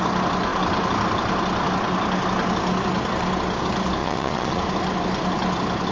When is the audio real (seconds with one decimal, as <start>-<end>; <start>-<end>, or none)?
0.0-4.0; 4.6-5.9

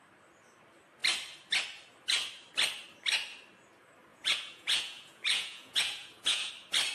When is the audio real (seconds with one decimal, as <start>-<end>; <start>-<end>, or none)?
0.0-4.1; 6.5-6.9

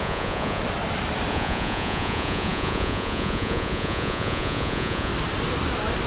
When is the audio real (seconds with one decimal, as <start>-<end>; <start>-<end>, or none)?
0.6-1.3; 5.1-6.1

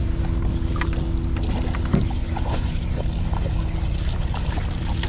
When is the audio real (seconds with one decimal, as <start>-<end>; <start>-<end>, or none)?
0.0-2.2; 3.0-5.1